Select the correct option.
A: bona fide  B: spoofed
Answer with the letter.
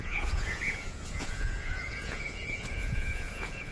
B